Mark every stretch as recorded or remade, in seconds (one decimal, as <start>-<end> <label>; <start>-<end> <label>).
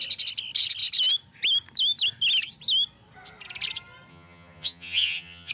0.0-4.1 recorded; 4.1-5.5 remade